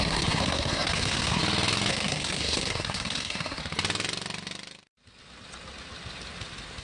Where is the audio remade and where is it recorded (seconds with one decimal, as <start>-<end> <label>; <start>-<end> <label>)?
0.0-1.4 remade; 1.4-1.9 recorded; 1.9-3.6 remade; 3.6-6.8 recorded